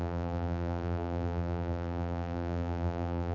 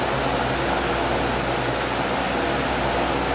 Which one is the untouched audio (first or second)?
second